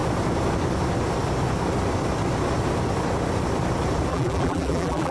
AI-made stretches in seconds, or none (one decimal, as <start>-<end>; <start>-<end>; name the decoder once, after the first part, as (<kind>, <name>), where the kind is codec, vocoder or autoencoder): 4.1-5.1 (vocoder, BigVGAN v2)